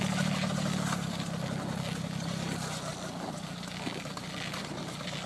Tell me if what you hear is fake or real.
real